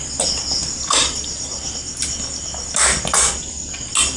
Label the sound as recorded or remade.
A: recorded